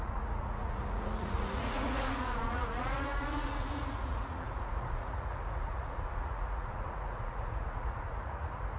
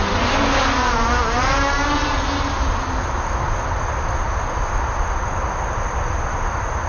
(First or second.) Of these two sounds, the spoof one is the first